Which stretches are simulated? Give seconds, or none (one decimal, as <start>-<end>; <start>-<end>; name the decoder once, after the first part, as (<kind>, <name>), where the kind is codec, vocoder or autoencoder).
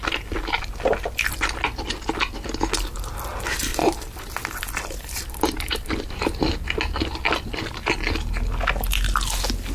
3.7-6.2 (vocoder, BigVGAN v2)